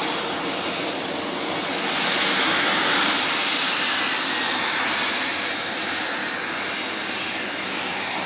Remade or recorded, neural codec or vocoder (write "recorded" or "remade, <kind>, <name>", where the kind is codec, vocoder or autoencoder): recorded